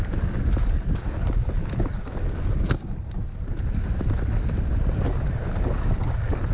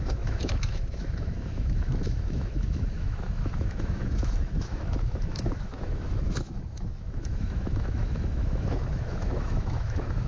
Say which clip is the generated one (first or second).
second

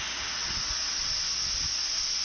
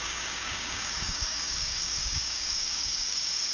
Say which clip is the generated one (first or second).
second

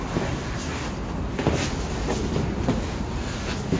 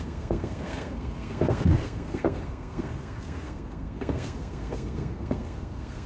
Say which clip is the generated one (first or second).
second